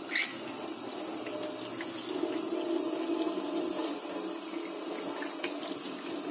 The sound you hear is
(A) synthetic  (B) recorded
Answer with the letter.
B